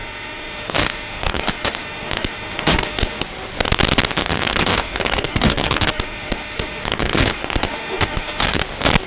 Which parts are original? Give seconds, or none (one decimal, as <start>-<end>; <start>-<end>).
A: 3.2-4.2; 8.6-9.1